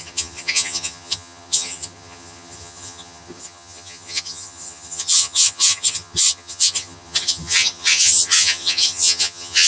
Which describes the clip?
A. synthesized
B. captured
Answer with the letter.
A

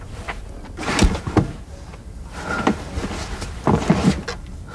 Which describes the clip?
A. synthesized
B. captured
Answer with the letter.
B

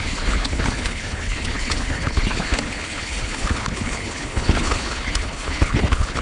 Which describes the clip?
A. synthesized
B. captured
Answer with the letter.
A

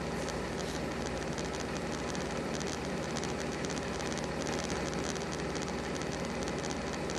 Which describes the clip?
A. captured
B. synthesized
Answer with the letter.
A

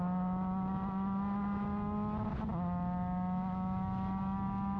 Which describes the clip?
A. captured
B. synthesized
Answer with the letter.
A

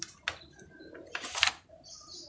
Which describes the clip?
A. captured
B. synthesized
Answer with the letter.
A